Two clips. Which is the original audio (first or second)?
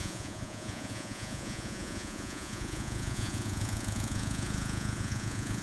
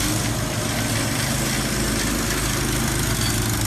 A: second